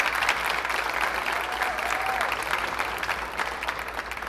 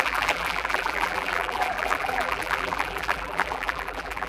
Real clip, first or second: first